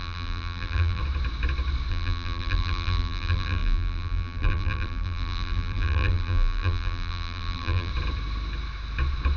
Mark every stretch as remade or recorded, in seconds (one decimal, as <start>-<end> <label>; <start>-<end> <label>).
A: 0.0-1.0 remade; 1.0-1.9 recorded; 1.9-7.9 remade; 7.9-9.4 recorded